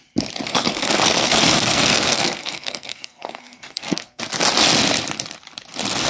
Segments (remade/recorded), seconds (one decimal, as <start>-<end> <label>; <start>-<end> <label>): 0.0-0.5 recorded; 0.5-4.2 remade; 4.2-6.1 recorded